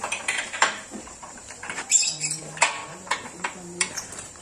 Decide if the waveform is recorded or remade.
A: remade